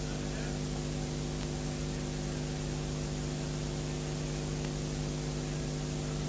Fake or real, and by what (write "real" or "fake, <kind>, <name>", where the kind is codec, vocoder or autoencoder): real